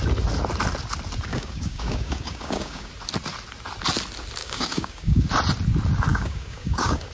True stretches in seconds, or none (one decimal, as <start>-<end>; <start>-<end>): 0.0-1.3; 2.9-4.4; 5.3-6.1